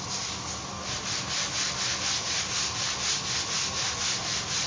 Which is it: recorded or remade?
recorded